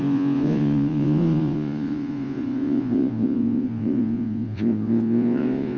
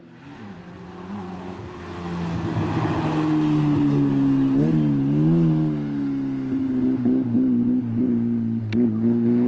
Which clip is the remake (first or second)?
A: first